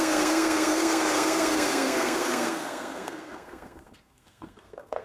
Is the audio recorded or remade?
remade